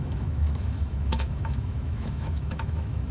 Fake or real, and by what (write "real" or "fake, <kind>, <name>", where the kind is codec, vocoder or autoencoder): fake, autoencoder, DAC-VAE